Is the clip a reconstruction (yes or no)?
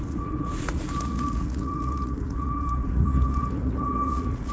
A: yes